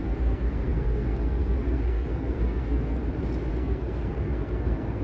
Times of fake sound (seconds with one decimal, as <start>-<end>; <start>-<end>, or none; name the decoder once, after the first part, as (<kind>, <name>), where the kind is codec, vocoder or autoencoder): 0.0-3.0 (codec, SNAC); 3.5-5.0